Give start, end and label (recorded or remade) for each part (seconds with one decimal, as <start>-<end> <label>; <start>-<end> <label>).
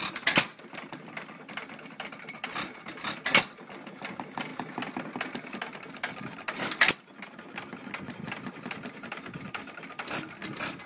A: 0.0-10.9 recorded